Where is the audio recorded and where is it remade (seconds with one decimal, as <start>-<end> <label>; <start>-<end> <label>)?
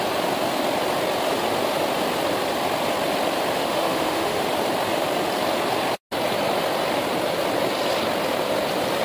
0.0-3.6 recorded; 3.6-4.4 remade; 4.4-9.0 recorded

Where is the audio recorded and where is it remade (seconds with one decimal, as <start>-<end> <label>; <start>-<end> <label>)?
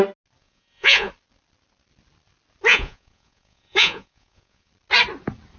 0.0-0.4 recorded; 0.4-1.1 remade; 1.1-2.7 recorded; 2.7-4.7 remade; 4.7-5.6 recorded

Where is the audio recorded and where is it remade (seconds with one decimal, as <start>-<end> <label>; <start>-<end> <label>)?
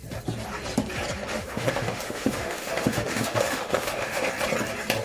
0.0-1.3 recorded; 1.3-4.3 remade; 4.3-5.0 recorded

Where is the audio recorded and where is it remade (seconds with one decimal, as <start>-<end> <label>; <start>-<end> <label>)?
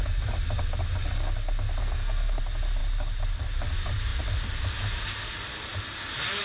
0.0-1.8 recorded; 1.8-2.4 remade; 2.4-6.4 recorded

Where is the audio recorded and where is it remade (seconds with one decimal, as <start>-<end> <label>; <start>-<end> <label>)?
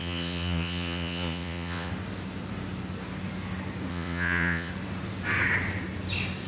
0.0-1.9 remade; 1.9-3.9 recorded; 3.9-4.7 remade; 4.7-6.5 recorded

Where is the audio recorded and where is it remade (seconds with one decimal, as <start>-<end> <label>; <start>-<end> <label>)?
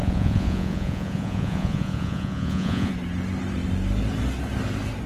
0.0-2.9 remade; 2.9-5.1 recorded